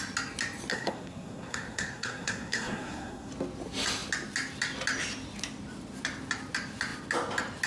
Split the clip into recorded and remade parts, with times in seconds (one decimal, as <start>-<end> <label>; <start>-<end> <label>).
0.0-0.7 recorded; 0.7-3.3 remade; 3.3-7.7 recorded